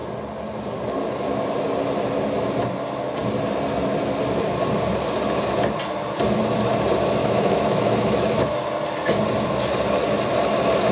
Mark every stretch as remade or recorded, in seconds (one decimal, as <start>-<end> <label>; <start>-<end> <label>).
0.0-7.2 recorded; 7.2-8.7 remade; 8.7-10.9 recorded